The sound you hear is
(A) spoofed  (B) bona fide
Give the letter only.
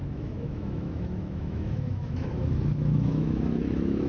A